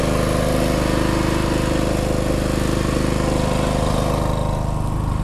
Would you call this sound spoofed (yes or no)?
no